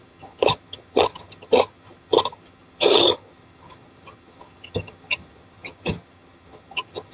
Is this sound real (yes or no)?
no